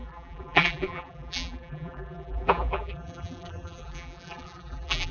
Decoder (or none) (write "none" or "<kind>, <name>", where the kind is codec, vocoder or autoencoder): vocoder, BigVGAN v2